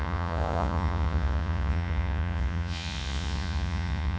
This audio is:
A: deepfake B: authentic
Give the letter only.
A